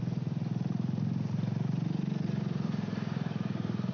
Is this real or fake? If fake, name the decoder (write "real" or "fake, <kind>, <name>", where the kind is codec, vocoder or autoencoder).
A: fake, vocoder, BigVGAN v2